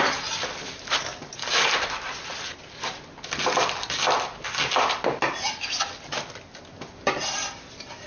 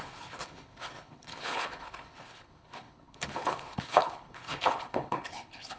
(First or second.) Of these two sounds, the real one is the first